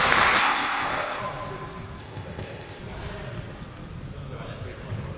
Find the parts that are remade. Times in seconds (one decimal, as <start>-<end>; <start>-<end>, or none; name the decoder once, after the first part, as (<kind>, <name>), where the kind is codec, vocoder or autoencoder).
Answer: 0.4-1.2 (codec, ZipCodec); 2.0-2.8